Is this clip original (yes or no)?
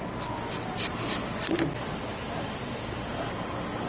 yes